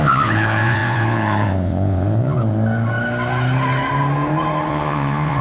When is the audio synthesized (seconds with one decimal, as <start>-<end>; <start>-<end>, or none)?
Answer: 0.0-2.4; 4.7-5.4